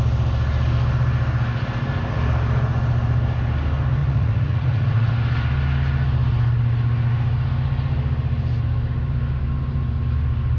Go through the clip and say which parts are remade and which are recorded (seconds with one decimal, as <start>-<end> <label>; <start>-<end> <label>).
0.0-4.0 recorded; 4.0-5.1 remade; 5.1-10.6 recorded